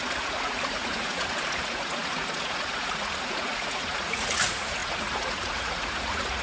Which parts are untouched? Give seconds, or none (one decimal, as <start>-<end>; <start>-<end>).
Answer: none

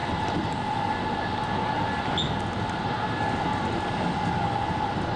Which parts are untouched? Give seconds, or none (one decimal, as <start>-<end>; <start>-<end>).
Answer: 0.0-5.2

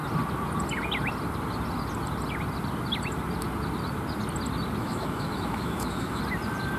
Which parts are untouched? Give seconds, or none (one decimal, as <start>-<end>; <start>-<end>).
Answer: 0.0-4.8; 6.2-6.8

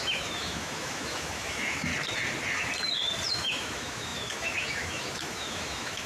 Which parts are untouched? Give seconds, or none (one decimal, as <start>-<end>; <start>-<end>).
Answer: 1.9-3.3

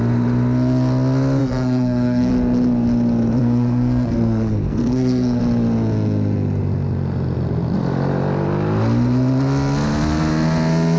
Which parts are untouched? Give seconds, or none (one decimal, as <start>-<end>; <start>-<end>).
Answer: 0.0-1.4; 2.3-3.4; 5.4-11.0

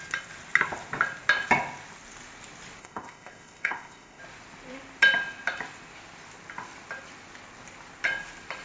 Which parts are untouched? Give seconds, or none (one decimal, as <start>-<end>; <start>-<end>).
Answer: 0.0-2.8; 4.2-8.6